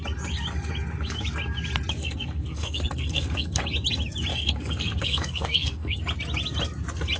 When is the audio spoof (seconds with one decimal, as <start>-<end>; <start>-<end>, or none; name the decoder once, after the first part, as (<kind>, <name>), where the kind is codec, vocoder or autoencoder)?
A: 2.0-3.6 (codec, SNAC); 4.3-6.0